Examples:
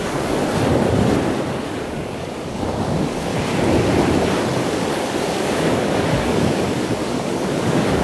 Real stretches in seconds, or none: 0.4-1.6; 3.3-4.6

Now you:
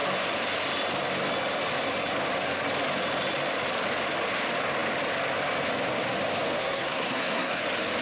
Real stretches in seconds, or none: 0.0-6.6; 7.6-8.0